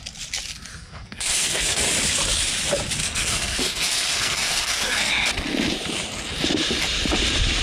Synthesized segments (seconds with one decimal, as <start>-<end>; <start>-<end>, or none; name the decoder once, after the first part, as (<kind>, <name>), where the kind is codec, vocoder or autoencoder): 0.7-1.8 (codec, SNAC); 3.0-5.1